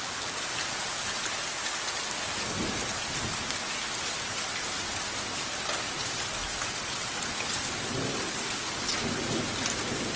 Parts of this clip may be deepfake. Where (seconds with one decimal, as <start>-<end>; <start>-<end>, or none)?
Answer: none

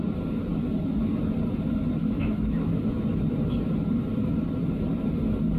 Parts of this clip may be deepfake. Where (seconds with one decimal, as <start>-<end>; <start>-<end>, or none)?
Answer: 2.0-2.7

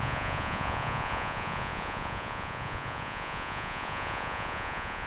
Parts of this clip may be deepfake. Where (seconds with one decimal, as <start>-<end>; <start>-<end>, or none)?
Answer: 0.0-5.1

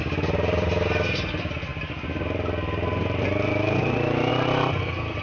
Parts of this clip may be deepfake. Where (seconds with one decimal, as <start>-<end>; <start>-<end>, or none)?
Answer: none

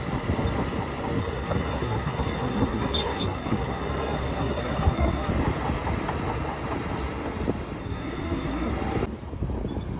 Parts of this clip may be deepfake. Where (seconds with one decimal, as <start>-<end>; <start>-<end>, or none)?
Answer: 1.2-5.3; 7.8-8.7

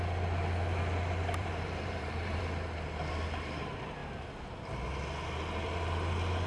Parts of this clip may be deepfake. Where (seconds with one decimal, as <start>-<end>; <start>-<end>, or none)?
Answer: 1.4-2.4

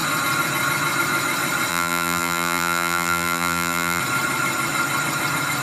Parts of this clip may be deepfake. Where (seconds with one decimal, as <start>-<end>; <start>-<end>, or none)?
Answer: 1.7-4.0